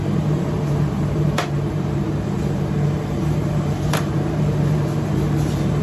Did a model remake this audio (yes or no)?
yes